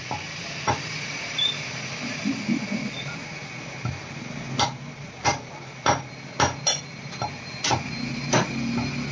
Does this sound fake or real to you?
real